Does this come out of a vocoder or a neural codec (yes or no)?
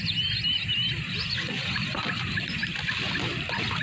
yes